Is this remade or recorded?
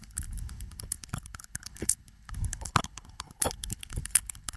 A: remade